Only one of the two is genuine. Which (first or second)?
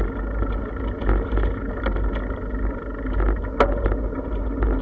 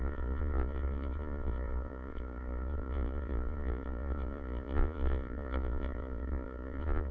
first